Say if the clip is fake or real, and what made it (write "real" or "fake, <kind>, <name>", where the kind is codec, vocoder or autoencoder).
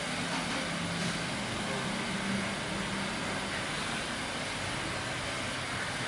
real